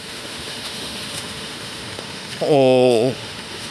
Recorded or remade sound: remade